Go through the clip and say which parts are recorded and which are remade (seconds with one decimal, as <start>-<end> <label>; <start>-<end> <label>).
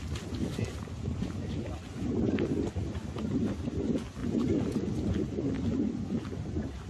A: 0.0-6.9 recorded